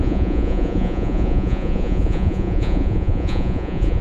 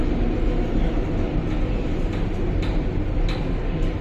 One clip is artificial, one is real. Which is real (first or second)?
second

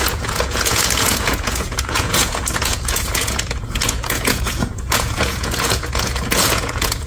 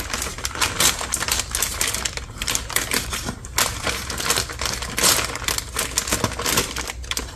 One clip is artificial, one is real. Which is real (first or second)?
second